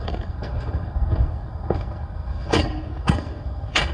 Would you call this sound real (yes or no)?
no